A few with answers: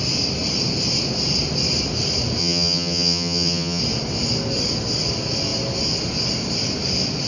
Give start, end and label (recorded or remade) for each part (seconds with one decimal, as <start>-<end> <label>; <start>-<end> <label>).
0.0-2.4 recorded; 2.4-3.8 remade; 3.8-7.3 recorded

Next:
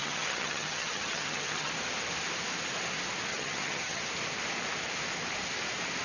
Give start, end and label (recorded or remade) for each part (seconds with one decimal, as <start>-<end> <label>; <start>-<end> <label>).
0.0-1.7 remade; 1.7-3.3 recorded; 3.3-4.0 remade; 4.0-6.0 recorded

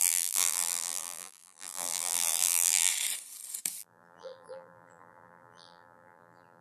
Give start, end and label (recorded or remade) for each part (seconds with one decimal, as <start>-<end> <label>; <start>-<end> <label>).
0.0-2.9 remade; 2.9-3.8 recorded; 3.8-6.6 remade

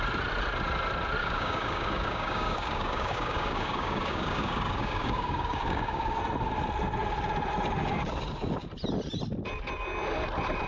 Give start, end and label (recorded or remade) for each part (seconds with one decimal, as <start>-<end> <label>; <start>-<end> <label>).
0.0-1.2 recorded; 1.2-6.2 remade; 6.2-10.7 recorded

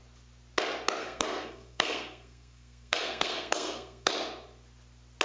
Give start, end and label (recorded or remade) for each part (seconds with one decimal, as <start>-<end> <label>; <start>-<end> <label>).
0.0-1.0 recorded; 1.0-4.1 remade; 4.1-5.2 recorded

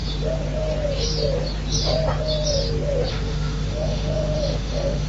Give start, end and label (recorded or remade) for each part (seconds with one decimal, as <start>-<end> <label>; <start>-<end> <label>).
0.0-3.1 recorded; 3.1-5.1 remade

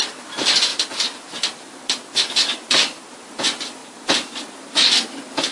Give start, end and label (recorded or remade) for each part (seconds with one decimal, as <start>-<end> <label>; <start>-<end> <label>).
0.0-5.5 recorded